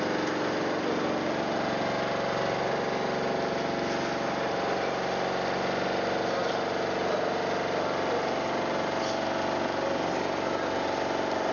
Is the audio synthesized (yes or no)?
no